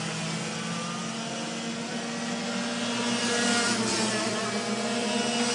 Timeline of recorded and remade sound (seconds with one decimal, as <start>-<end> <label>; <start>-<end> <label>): 0.0-5.5 recorded